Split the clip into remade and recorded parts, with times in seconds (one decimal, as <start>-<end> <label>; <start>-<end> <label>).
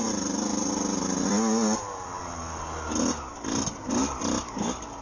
0.0-5.0 recorded